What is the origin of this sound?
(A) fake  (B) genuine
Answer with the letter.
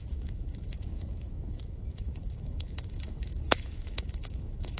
A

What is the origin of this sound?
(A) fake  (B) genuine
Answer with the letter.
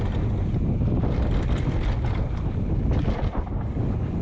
B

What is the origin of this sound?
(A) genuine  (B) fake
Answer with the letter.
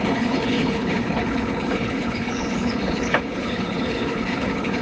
B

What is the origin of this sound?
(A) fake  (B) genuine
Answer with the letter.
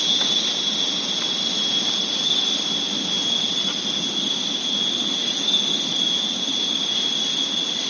B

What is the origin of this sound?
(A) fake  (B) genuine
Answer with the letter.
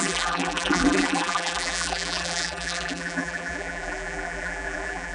A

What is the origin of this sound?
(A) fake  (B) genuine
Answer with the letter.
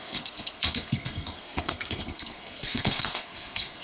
A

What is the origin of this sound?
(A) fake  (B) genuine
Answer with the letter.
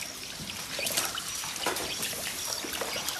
B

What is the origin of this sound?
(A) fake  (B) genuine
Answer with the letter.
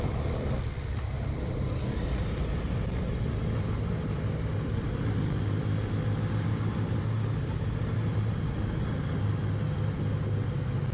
B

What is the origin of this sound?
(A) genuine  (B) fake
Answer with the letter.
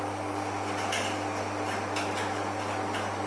A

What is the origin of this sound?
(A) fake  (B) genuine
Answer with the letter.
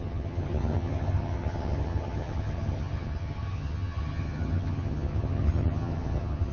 A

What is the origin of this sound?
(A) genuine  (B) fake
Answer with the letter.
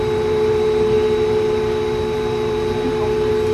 B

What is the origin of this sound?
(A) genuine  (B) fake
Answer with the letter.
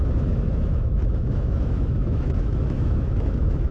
B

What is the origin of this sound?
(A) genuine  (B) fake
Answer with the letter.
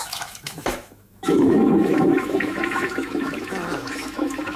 B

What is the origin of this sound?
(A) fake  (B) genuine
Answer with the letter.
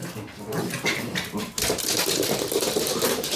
B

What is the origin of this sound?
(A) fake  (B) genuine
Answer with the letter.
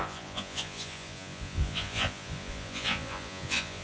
A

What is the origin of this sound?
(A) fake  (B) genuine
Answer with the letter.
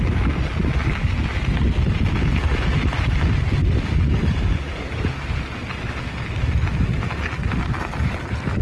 B